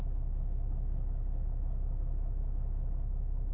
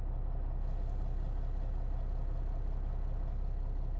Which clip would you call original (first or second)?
second